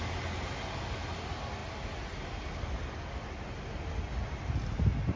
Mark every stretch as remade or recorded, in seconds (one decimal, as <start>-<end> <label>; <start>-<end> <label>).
0.0-5.2 recorded